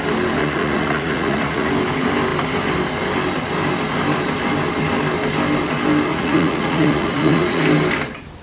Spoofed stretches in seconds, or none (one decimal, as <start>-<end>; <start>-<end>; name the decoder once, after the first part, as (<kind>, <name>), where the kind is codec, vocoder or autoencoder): 0.4-1.7 (vocoder, Vocos); 6.1-7.6